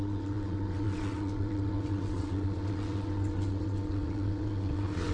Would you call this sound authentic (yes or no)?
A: no